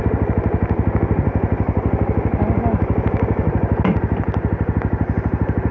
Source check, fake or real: real